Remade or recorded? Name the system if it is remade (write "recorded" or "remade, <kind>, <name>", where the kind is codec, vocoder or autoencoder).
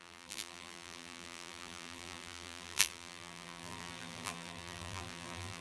remade, vocoder, BigVGAN v2